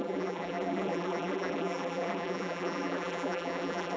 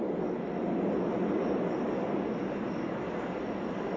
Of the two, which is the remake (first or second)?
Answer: first